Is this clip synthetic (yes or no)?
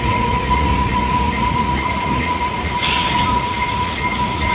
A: yes